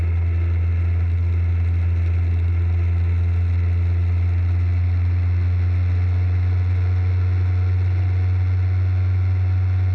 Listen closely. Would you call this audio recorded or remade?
recorded